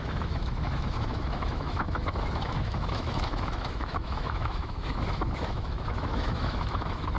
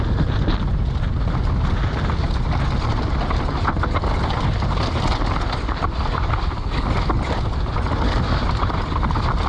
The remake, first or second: first